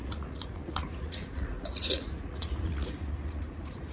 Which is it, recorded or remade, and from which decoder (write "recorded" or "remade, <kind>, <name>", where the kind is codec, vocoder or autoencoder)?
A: remade, vocoder, Vocos